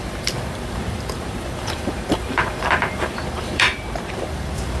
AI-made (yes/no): yes